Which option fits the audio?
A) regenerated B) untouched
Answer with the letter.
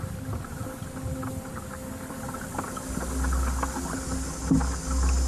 B